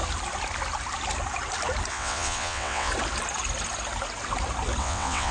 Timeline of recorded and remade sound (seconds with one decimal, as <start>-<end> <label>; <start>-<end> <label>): 0.0-1.9 recorded; 1.9-2.9 remade; 2.9-4.8 recorded; 4.8-5.3 remade